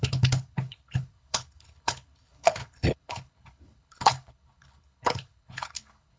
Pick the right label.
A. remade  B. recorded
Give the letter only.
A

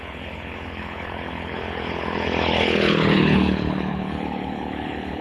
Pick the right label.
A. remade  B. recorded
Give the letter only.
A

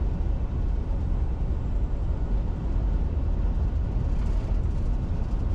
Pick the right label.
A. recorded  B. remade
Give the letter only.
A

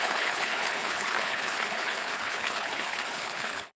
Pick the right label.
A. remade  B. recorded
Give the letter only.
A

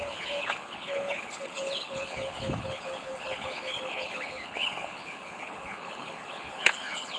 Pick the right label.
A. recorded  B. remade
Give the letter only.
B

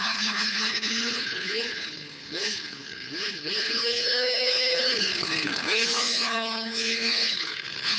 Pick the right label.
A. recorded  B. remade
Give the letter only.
B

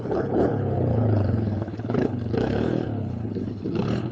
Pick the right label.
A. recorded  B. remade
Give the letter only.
B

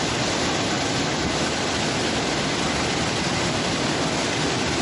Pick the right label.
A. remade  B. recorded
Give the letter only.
B